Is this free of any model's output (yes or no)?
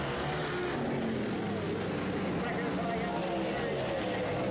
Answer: yes